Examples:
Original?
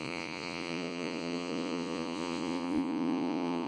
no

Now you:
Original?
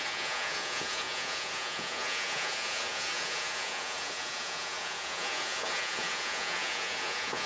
no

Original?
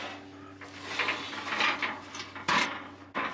yes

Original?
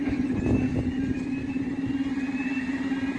yes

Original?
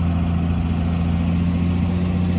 yes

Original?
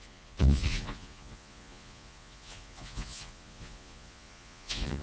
no